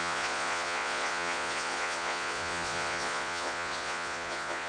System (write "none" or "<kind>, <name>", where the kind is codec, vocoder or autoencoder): vocoder, Vocos